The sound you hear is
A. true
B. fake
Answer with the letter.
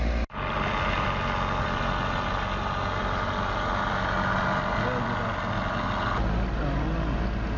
A